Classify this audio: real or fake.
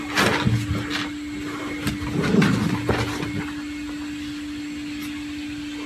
real